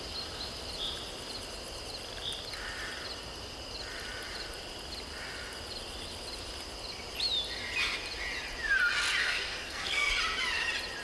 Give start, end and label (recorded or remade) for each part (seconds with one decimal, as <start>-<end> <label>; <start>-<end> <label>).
0.0-9.2 recorded; 9.2-10.1 remade; 10.1-11.0 recorded